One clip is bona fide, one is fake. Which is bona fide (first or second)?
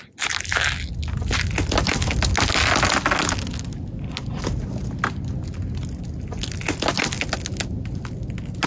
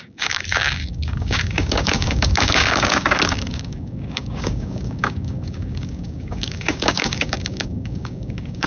first